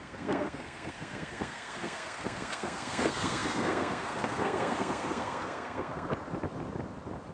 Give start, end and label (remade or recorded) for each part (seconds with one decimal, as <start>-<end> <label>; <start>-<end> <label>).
0.0-6.1 remade; 6.1-7.3 recorded